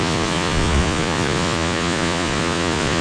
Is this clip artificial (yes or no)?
yes